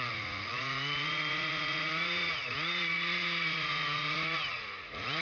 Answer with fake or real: fake